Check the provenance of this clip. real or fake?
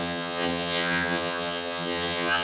fake